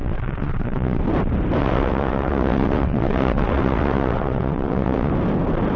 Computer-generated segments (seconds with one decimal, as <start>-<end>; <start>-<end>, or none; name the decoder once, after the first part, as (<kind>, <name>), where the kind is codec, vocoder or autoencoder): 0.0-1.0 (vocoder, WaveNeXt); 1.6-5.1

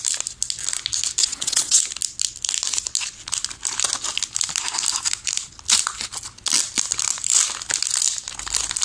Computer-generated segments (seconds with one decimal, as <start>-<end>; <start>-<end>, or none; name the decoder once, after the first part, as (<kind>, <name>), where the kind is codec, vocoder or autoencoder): 1.2-1.8 (vocoder, WaveNeXt)

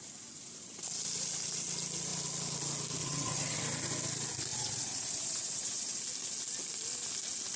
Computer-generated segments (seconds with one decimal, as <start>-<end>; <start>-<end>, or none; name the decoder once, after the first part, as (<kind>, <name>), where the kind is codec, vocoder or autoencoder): 3.0-3.6 (vocoder, WaveNeXt); 4.5-6.0

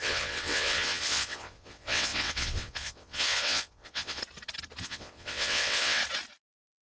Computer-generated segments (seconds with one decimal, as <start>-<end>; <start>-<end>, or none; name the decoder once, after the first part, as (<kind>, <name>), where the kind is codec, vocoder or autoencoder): 0.0-4.2 (vocoder, WaveNeXt); 4.8-6.0; 6.5-6.9